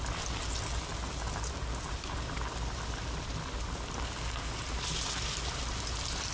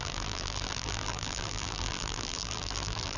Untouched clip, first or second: first